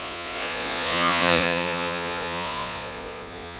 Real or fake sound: fake